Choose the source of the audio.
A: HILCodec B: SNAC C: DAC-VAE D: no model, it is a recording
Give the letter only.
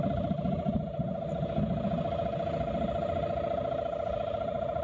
D